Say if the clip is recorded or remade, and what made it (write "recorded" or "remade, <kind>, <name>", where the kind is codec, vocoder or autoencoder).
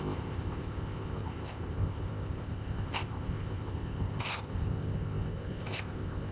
remade, codec, ZipCodec